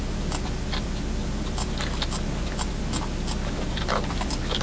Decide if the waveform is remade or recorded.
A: recorded